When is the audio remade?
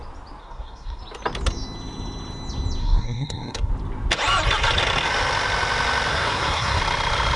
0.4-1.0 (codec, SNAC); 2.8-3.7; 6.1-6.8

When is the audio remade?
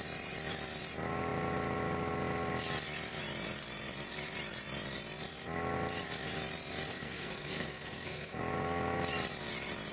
6.9-8.4 (codec, SNAC)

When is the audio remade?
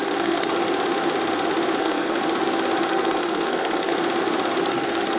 0.0-0.5 (codec, SNAC); 1.8-2.2; 2.9-3.9; 4.6-5.2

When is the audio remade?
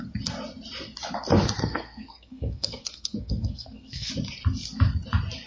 1.6-4.1 (codec, SNAC)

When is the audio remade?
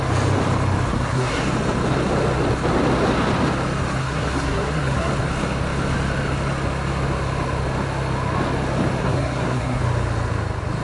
0.9-1.4 (codec, SNAC); 4.0-5.1; 9.0-9.8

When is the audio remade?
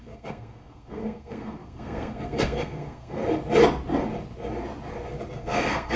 0.0-3.2 (codec, SNAC); 5.3-6.0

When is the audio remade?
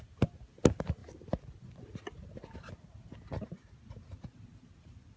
none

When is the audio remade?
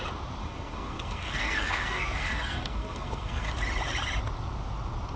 0.4-3.5 (codec, SNAC)